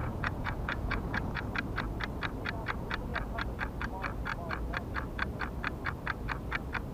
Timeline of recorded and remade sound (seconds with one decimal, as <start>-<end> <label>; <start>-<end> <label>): 0.0-1.5 remade; 1.5-6.9 recorded